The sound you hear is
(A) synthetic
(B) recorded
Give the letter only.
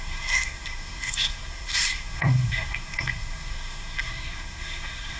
A